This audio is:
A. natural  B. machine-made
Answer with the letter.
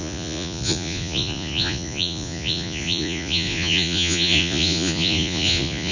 B